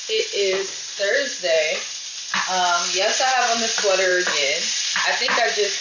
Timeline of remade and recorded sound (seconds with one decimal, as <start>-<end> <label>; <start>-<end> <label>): 0.0-5.8 recorded